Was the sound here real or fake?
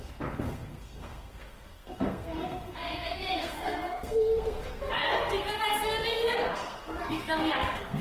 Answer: fake